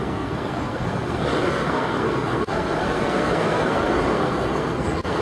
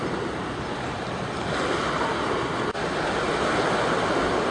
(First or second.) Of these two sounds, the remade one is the first